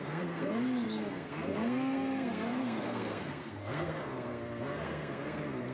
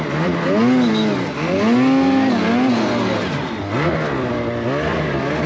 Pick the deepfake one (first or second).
first